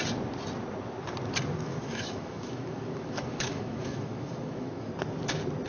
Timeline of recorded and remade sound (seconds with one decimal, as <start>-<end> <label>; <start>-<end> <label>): 0.0-1.7 recorded; 1.7-4.9 remade; 4.9-5.7 recorded